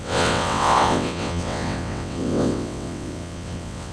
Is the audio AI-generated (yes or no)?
yes